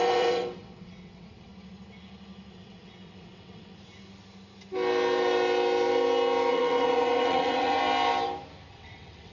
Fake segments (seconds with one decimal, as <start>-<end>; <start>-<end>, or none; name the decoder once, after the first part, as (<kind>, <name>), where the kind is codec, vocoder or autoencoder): 0.0-1.5 (vocoder, WaveNeXt); 2.5-3.7; 6.5-7.8; 8.7-9.3